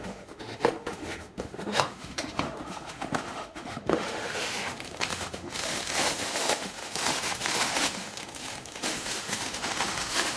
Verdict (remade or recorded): remade